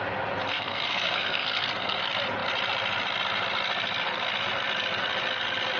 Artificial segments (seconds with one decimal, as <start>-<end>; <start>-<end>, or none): 0.5-2.0